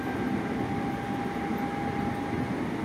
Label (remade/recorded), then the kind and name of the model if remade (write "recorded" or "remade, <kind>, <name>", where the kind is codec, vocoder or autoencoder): recorded